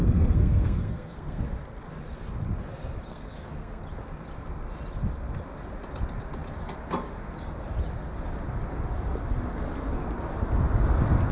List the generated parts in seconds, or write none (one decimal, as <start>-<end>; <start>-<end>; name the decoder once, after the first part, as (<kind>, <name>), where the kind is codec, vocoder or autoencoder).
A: 0.0-1.4 (codec, SNAC); 3.1-3.8

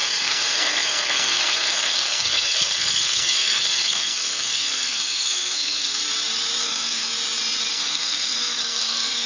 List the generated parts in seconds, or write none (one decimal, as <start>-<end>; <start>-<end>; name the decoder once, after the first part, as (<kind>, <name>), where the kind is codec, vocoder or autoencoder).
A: 0.0-6.0 (codec, SNAC); 6.6-7.1; 7.7-9.3

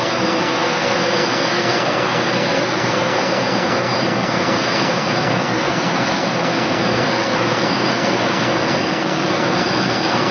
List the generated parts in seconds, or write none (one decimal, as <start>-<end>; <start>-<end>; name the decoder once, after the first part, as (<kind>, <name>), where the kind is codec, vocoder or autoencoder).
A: 0.0-10.3 (codec, SNAC)